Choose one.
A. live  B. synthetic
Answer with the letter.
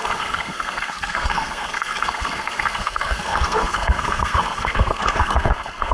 B